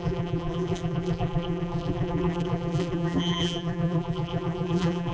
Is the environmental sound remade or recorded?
remade